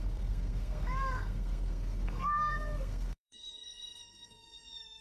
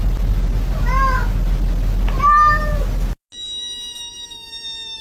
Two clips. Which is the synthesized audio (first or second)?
first